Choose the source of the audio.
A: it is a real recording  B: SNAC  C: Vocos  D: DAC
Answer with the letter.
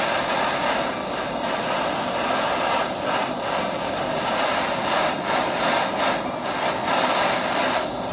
A